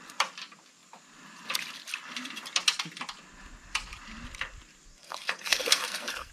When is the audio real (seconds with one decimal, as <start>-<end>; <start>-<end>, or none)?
0.0-4.9